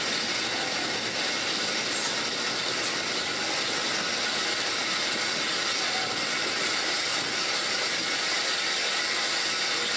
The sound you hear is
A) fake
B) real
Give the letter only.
B